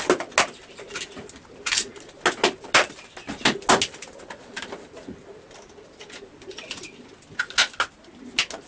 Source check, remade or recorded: recorded